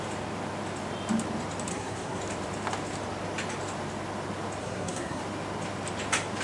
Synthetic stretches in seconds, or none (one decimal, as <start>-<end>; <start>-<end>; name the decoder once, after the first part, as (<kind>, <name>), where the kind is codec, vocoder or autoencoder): 1.7-2.2 (codec, SNAC); 4.6-5.2